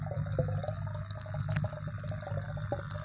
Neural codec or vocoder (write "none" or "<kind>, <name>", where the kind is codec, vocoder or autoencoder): none